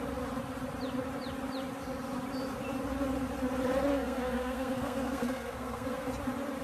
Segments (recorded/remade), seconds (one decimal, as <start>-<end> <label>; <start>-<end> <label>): 0.0-3.9 recorded; 3.9-6.1 remade; 6.1-6.6 recorded

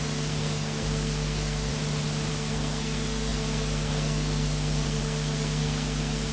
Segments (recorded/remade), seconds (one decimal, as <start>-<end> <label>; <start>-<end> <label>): 0.0-1.7 remade; 1.7-2.3 recorded; 2.3-6.3 remade